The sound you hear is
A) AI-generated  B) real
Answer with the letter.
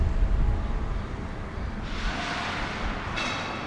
B